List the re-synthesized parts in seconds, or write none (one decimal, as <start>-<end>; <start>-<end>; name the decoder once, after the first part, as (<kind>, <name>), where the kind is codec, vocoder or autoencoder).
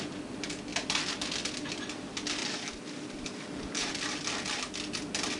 2.4-3.9 (vocoder, BigVGAN v2)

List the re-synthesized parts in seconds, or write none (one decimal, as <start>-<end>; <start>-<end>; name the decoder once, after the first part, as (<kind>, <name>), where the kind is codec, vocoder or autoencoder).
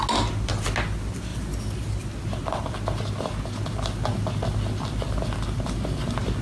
none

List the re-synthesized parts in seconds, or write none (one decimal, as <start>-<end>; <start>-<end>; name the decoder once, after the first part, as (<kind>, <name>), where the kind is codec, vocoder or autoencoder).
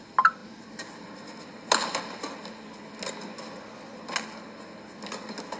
none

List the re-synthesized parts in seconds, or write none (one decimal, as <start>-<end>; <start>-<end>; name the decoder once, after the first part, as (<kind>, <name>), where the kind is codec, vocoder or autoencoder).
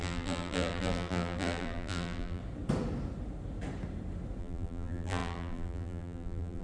0.0-2.4 (vocoder, BigVGAN v2); 4.4-6.6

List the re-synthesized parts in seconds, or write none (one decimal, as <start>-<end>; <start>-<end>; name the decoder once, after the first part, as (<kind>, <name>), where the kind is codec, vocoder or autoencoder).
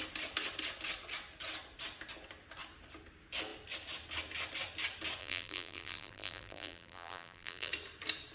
5.2-7.7 (vocoder, BigVGAN v2)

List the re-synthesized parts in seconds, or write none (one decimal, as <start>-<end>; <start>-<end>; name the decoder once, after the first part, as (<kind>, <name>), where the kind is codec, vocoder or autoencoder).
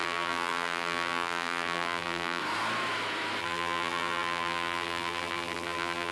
0.0-2.4 (vocoder, BigVGAN v2); 3.4-6.1